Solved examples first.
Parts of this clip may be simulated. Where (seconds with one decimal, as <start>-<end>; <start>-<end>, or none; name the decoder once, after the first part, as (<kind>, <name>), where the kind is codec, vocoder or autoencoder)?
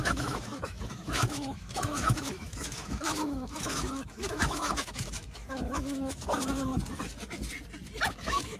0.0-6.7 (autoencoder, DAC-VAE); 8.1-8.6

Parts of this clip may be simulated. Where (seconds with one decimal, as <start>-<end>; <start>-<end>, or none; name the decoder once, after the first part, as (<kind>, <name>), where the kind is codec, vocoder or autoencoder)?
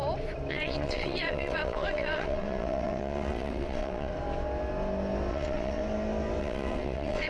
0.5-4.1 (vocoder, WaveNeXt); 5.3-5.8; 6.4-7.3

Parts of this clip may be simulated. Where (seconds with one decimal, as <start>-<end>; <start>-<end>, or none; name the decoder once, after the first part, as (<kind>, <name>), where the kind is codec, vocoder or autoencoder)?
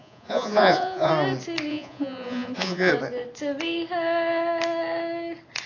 0.0-1.1 (vocoder, Vocos); 1.7-2.9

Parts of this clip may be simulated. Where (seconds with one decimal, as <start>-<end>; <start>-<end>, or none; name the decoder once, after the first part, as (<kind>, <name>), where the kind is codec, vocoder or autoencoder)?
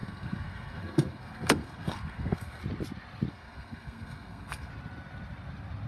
0.0-2.6 (codec, SNAC); 3.3-4.7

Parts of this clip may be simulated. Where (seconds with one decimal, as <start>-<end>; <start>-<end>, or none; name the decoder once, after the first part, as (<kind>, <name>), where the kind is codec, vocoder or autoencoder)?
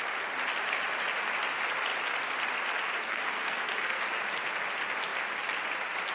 3.0-4.0 (codec, SNAC)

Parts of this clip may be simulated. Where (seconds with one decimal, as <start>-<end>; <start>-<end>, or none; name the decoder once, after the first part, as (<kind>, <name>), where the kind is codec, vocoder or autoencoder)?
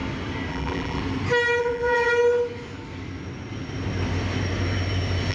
0.5-1.0 (vocoder, BigVGAN v2); 1.6-2.1